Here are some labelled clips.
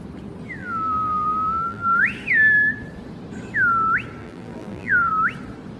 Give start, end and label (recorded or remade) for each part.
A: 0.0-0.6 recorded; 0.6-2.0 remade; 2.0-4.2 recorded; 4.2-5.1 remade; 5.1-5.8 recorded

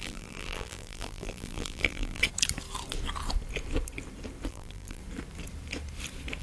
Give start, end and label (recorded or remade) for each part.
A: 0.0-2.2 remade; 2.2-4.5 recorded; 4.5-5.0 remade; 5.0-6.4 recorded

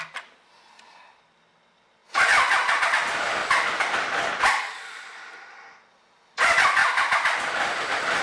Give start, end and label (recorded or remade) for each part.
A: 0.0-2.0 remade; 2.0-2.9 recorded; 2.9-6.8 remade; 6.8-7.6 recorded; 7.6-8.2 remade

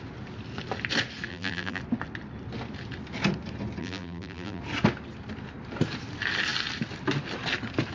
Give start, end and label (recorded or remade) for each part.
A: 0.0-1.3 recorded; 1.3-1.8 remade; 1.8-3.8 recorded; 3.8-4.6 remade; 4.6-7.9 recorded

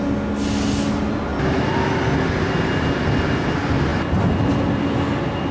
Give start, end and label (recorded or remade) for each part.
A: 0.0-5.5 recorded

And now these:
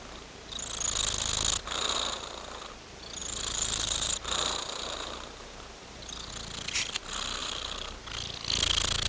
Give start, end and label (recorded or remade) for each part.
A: 0.0-3.2 recorded; 3.2-6.3 remade; 6.3-7.4 recorded; 7.4-8.0 remade; 8.0-9.1 recorded

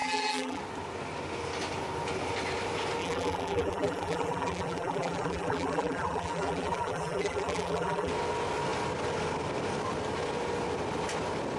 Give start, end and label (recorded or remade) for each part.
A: 0.0-0.6 remade; 0.6-3.0 recorded; 3.0-8.1 remade; 8.1-11.6 recorded

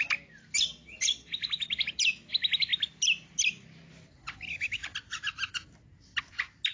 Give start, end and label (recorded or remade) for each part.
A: 0.0-6.7 recorded